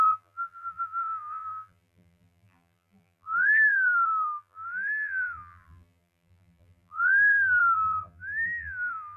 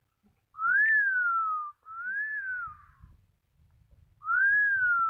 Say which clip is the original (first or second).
second